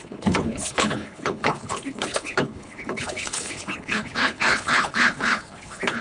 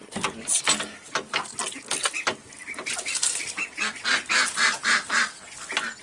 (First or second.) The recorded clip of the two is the second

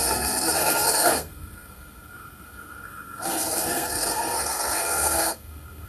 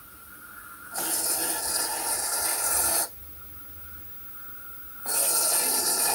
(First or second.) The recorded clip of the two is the second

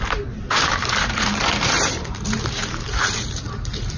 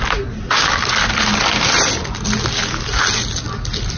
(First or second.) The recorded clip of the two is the second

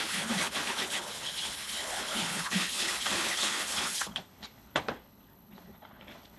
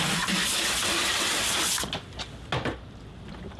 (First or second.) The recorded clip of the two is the second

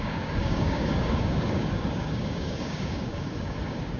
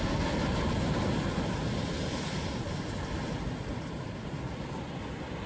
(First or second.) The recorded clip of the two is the second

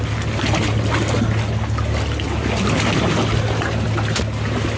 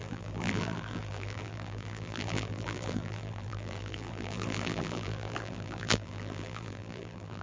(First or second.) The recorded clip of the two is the first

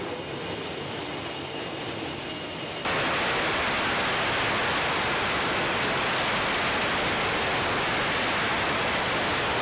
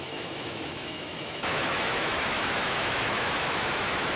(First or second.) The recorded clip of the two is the first